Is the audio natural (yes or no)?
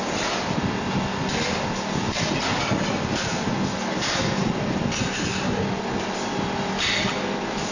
yes